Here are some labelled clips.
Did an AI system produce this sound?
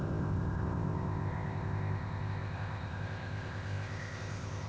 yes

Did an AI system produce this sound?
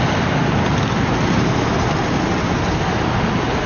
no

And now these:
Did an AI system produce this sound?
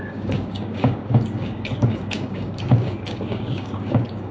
yes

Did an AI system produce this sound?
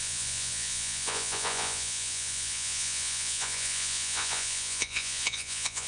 yes